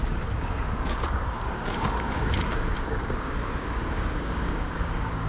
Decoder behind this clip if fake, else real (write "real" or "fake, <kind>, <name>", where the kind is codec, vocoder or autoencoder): fake, codec, DAC